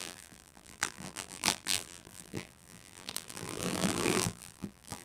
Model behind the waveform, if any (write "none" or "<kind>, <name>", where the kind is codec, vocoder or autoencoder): vocoder, BigVGAN v2